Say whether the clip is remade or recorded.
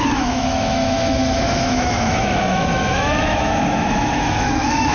remade